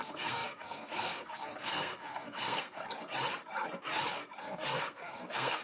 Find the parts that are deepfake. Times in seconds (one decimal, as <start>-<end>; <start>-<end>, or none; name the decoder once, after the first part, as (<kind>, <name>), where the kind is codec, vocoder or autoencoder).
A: 0.0-2.8 (codec, SNAC); 4.4-5.6